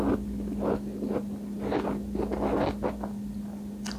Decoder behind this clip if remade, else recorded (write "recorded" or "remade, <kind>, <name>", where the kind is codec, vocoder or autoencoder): recorded